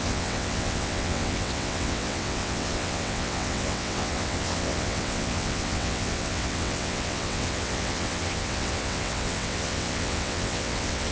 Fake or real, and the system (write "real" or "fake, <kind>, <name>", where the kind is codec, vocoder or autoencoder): fake, vocoder, WaveNeXt